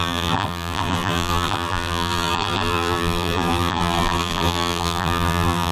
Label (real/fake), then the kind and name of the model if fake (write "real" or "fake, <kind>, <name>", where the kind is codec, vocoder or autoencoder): fake, vocoder, BigVGAN v2